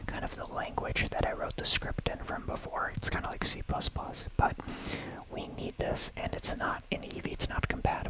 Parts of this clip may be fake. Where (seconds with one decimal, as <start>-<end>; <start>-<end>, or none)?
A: 2.4-3.2; 3.7-7.4